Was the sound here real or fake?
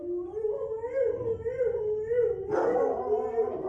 real